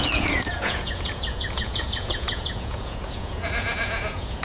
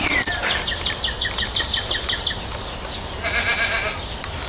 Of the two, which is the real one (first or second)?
second